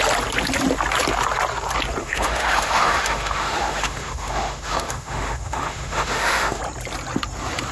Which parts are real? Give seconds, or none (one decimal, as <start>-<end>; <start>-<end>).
0.0-2.0; 6.6-7.7